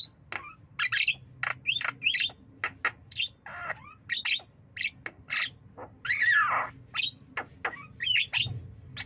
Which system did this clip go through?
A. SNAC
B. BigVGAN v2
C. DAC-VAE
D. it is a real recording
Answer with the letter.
D